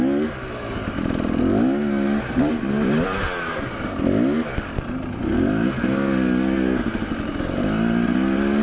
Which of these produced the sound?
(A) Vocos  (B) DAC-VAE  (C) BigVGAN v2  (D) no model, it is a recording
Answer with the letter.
D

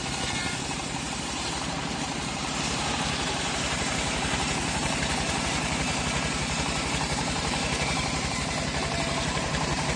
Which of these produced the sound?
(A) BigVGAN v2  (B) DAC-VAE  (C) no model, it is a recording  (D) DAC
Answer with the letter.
A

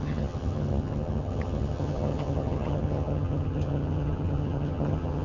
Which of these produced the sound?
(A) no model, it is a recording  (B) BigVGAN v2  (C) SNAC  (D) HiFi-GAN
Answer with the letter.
D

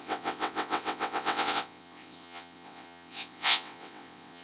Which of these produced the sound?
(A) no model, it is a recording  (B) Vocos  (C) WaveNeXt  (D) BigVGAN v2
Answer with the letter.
C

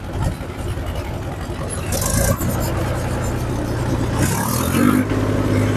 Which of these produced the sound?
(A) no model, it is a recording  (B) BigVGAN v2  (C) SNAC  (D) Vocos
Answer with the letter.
A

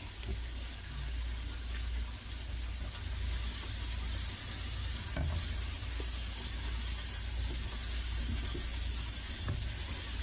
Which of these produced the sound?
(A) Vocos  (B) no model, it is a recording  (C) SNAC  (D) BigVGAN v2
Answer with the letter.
B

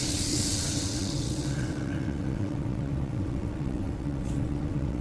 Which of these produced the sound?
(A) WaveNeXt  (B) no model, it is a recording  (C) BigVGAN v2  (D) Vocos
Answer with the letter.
A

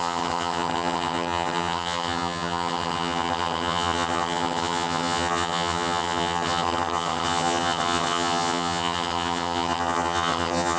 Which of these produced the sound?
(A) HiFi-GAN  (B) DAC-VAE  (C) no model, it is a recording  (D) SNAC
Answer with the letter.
A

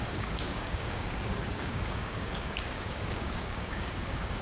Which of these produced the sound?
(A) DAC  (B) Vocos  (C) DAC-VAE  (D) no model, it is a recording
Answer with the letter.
A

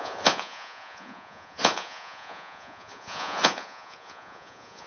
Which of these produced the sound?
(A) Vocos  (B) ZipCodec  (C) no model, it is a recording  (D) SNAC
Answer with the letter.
A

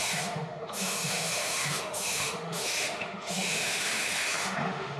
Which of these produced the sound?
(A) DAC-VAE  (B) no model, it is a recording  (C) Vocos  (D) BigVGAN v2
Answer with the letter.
A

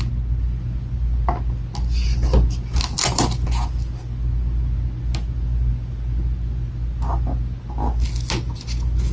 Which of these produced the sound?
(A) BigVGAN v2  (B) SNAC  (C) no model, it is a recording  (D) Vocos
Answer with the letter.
C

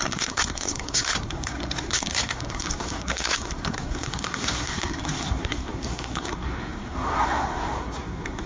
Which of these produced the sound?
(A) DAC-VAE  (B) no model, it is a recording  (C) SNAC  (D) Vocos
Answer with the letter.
C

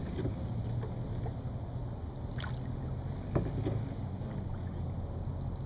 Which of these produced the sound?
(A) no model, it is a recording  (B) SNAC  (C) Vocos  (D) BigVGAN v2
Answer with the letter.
A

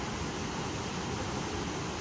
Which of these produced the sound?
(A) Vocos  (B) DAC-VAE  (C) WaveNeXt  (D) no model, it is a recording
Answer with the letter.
D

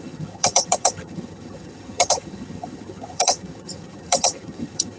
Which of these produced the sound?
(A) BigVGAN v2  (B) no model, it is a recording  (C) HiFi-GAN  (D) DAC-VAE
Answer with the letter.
C